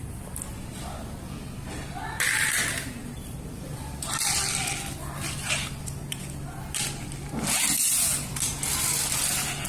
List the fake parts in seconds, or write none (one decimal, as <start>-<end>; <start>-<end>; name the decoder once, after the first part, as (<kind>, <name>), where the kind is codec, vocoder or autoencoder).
none